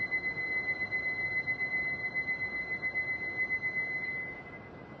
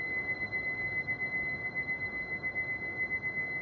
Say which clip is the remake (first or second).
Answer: second